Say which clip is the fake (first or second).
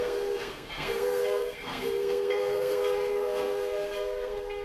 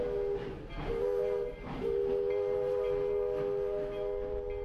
first